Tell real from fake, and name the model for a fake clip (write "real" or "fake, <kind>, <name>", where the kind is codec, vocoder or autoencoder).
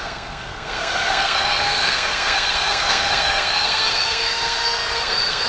fake, codec, SNAC